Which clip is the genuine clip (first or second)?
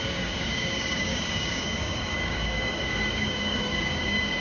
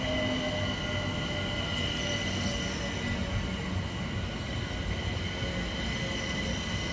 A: second